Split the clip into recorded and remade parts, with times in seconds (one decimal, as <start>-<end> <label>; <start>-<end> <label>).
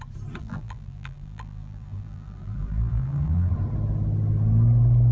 0.0-0.4 recorded; 0.4-3.5 remade; 3.5-5.1 recorded